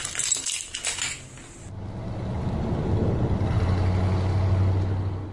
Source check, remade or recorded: recorded